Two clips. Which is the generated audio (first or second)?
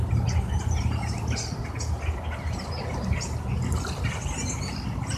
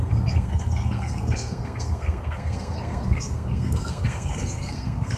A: second